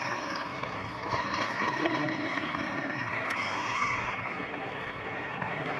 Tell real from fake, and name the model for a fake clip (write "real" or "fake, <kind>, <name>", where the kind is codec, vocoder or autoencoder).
fake, codec, SNAC